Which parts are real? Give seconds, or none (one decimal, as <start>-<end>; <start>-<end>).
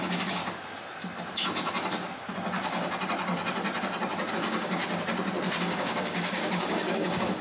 0.4-4.3; 4.8-5.6